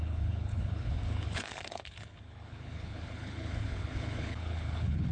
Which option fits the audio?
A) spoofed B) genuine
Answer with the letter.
A